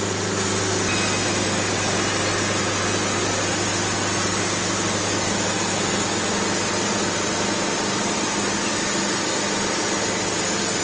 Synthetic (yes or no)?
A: no